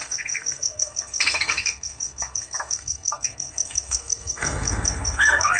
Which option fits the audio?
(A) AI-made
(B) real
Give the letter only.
A